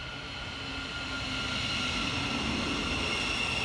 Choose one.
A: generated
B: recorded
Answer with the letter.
B